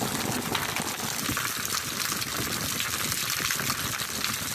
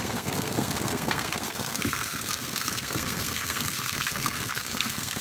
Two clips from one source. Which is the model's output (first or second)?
second